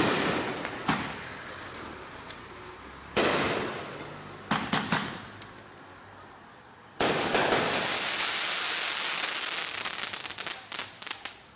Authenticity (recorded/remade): recorded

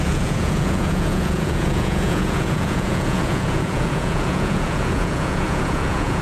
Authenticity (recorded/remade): remade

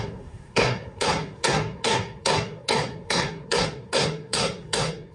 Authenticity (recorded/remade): remade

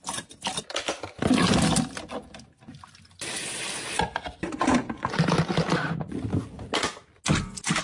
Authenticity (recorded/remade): recorded